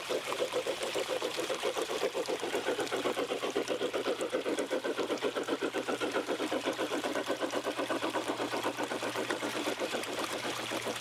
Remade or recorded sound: remade